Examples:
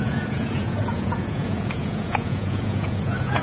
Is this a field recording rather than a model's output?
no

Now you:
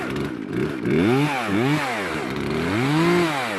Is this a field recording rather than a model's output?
yes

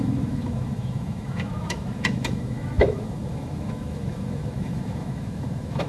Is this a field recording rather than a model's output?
no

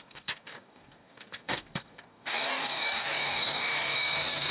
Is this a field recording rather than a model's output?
no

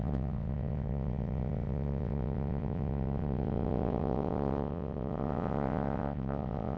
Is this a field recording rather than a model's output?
no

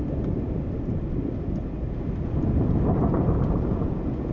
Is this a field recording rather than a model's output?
yes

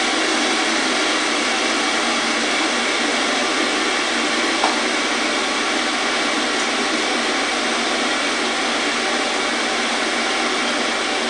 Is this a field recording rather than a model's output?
yes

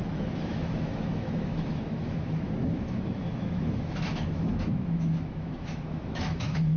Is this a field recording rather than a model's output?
no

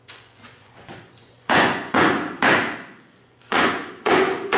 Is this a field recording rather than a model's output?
no